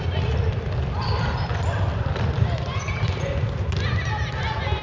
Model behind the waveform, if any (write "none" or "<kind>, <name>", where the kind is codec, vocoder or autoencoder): none